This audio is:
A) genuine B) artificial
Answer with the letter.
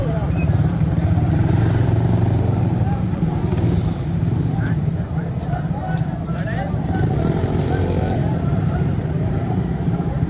B